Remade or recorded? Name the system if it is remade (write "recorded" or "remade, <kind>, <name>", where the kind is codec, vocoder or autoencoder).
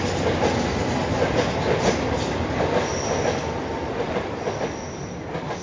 recorded